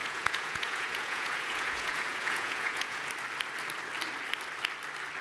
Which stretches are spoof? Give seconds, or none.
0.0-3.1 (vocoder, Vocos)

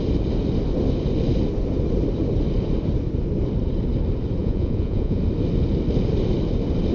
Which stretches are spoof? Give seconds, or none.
4.4-5.2 (vocoder, Vocos)

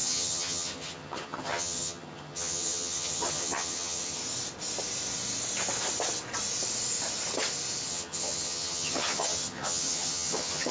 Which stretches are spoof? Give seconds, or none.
0.0-4.2 (vocoder, HiFi-GAN); 7.9-10.7

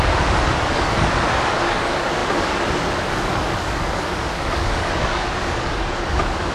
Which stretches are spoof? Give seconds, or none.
0.0-6.5 (codec, DAC)

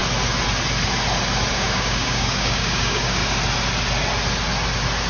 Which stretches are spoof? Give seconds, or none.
1.5-3.2 (codec, DAC)

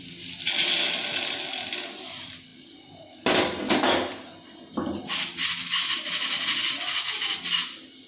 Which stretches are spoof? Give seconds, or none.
none